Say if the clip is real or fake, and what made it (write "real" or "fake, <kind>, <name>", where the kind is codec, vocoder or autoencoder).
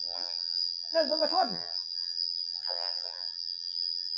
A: fake, vocoder, BigVGAN v2